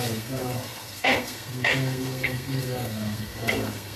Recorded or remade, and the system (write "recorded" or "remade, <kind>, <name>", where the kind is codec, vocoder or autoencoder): remade, codec, SNAC